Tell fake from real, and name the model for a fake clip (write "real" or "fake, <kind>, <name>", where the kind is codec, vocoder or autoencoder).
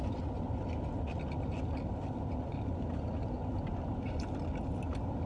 real